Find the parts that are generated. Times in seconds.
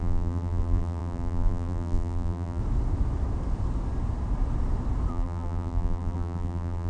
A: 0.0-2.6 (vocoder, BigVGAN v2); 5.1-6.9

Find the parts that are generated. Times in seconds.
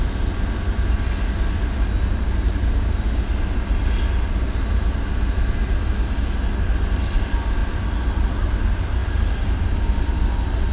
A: 7.6-8.3 (vocoder, BigVGAN v2); 9.0-9.6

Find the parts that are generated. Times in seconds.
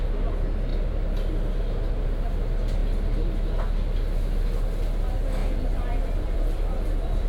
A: 5.4-7.3 (vocoder, BigVGAN v2)